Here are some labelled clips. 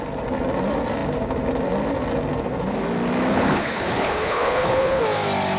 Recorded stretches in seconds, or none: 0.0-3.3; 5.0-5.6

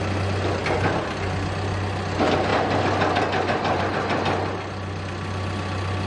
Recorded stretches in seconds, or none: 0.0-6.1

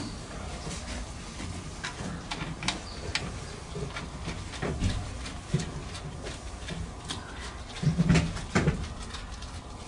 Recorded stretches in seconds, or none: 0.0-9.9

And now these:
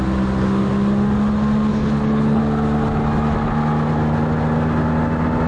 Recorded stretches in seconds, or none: 0.0-1.7; 2.4-5.5